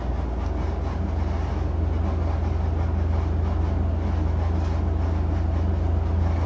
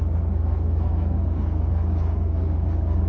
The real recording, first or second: first